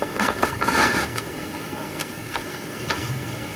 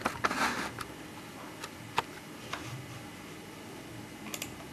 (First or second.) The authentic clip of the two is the second